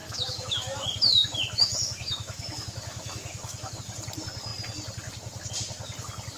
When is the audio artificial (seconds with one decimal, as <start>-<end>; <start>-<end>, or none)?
0.0-3.8